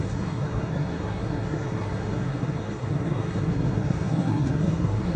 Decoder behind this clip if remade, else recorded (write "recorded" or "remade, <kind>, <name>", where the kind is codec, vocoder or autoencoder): remade, codec, SNAC